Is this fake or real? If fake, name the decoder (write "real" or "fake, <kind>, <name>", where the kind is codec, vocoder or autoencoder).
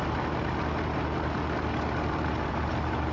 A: fake, vocoder, BigVGAN v2